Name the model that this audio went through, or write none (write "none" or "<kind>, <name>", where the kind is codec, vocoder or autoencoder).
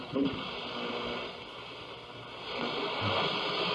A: none